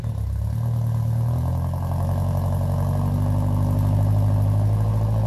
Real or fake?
real